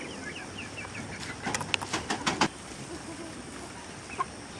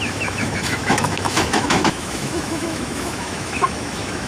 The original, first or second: first